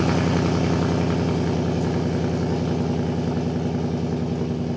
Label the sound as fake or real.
real